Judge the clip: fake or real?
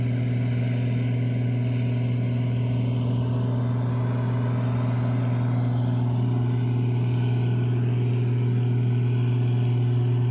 real